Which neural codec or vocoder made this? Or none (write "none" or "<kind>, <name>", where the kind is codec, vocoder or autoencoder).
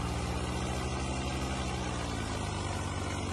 none